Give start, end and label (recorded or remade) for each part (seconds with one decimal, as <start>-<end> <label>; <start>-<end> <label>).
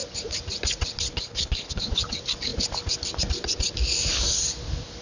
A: 0.0-1.1 recorded; 1.1-1.8 remade; 1.8-5.0 recorded